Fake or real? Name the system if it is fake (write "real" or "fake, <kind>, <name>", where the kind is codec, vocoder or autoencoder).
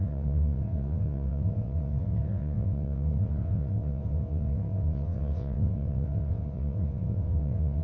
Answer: fake, vocoder, WaveNeXt